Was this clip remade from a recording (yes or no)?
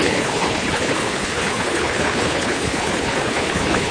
yes